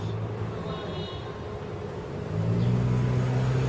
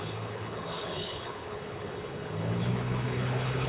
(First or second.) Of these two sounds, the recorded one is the first